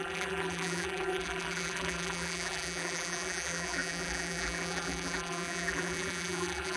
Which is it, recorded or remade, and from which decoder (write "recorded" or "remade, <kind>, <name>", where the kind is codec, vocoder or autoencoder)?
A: remade, vocoder, BigVGAN v2